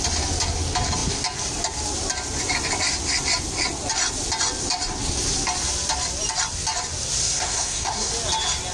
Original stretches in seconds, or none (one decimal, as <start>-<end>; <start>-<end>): 0.0-7.2; 8.1-8.7